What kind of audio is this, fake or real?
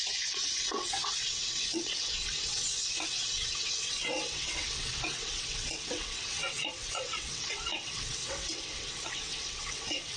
fake